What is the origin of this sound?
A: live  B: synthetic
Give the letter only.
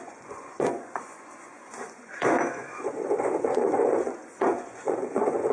B